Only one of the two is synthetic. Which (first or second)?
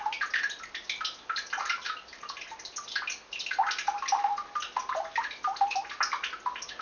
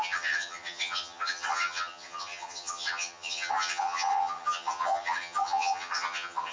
second